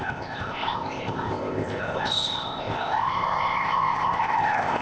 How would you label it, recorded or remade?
remade